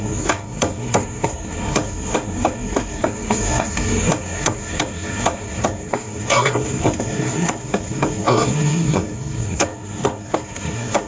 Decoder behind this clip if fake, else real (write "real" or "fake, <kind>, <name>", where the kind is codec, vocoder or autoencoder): fake, codec, SNAC